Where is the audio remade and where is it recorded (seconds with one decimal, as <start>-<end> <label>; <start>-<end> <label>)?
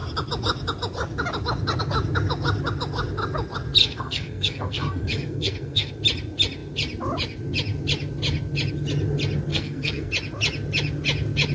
0.0-3.8 recorded; 3.8-5.9 remade; 5.9-9.5 recorded; 9.5-10.1 remade; 10.1-11.5 recorded